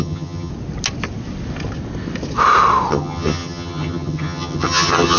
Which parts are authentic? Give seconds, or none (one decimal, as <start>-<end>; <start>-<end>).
0.5-2.9